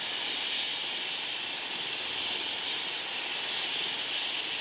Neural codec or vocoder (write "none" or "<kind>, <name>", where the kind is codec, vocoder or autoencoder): none